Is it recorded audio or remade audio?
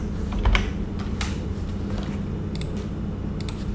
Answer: recorded